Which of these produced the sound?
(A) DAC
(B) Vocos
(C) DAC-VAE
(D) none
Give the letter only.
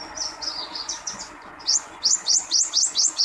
B